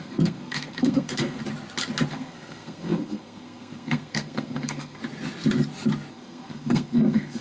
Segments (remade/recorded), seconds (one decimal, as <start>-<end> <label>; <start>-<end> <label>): 0.0-1.4 remade; 1.4-2.1 recorded; 2.1-5.0 remade; 5.0-6.1 recorded; 6.1-7.4 remade